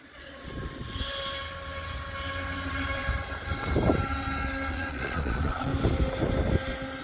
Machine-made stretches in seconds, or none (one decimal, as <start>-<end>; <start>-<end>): 0.0-0.5; 4.7-5.7